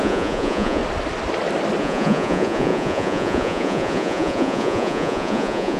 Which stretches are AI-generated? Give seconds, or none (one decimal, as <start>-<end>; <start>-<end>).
0.0-0.8; 1.8-5.8